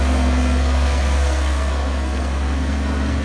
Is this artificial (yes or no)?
yes